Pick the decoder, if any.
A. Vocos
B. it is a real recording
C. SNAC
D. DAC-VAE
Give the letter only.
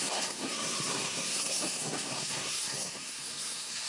C